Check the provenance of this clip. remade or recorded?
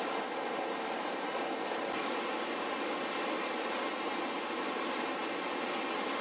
recorded